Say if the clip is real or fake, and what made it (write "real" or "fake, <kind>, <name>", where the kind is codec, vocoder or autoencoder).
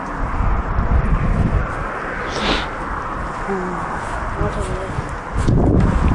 real